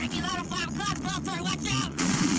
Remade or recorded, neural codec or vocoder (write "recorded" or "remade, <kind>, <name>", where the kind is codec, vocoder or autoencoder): remade, vocoder, Vocos